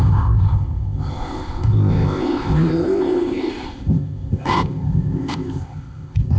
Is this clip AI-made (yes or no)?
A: yes